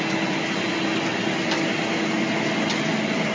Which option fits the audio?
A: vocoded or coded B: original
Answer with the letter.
B